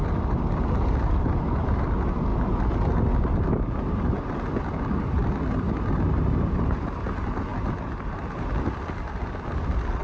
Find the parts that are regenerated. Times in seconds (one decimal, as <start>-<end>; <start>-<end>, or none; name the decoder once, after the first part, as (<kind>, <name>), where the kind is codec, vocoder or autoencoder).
none